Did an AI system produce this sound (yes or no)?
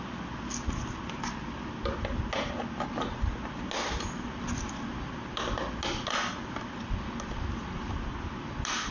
no